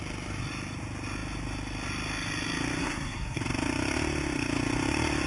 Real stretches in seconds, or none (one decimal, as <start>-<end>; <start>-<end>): 0.0-2.8; 3.4-5.3